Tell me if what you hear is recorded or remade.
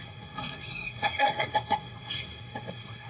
remade